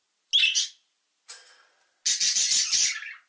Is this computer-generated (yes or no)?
no